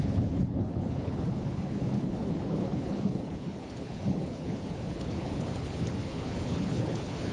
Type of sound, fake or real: fake